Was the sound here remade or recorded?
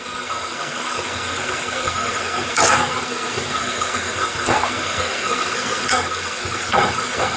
remade